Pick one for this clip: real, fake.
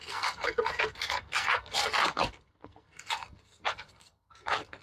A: fake